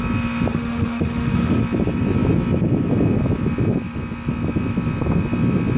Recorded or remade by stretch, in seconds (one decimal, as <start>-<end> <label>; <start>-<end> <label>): 0.0-0.5 recorded; 0.5-1.6 remade; 1.6-5.8 recorded